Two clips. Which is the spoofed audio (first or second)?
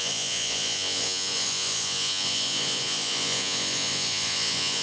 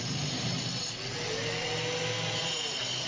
first